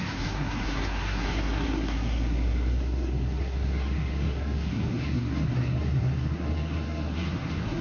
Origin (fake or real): fake